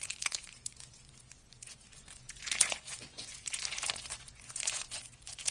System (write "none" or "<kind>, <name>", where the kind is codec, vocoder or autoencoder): vocoder, Vocos